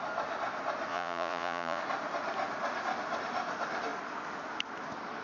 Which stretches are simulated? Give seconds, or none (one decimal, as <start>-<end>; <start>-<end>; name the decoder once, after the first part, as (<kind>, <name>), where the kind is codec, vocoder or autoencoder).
0.9-1.8 (vocoder, Vocos)